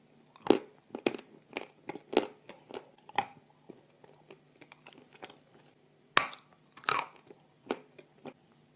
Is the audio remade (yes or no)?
no